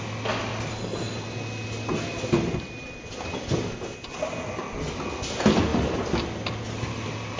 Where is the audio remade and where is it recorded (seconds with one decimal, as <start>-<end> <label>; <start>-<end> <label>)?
0.0-7.4 recorded